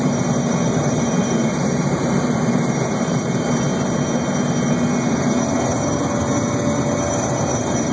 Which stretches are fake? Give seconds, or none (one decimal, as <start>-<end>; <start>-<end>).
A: 0.0-3.7; 7.5-7.9